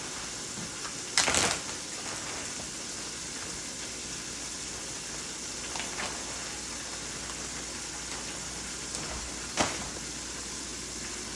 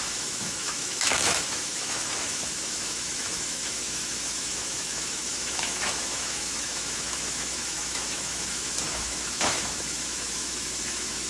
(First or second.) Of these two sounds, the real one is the first